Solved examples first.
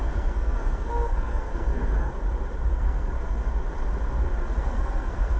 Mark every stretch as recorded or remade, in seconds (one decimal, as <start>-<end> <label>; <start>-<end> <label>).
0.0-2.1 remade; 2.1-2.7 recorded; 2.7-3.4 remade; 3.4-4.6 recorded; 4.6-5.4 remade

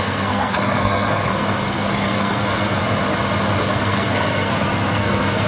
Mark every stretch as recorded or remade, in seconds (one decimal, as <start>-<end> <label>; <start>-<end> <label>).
0.0-2.8 remade; 2.8-3.7 recorded; 3.7-5.5 remade

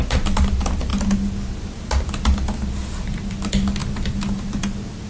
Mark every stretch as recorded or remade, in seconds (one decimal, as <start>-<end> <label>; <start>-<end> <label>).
0.0-5.1 recorded

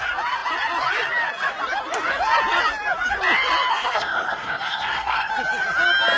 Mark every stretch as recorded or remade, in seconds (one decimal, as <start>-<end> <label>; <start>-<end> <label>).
0.0-3.7 recorded; 3.7-5.3 remade; 5.3-6.2 recorded

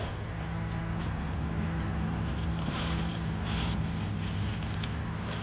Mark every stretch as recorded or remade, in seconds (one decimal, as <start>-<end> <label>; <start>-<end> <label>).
0.0-5.4 recorded

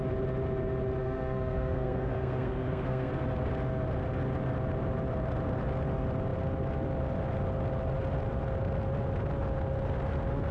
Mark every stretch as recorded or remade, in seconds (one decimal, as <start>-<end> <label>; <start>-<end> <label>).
0.0-1.0 recorded; 1.0-3.1 remade; 3.1-10.5 recorded

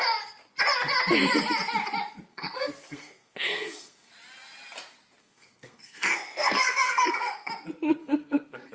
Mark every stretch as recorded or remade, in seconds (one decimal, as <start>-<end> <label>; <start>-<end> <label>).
0.0-2.3 recorded; 2.3-4.1 remade; 4.1-5.2 recorded; 5.2-7.5 remade; 7.5-8.0 recorded; 8.0-8.7 remade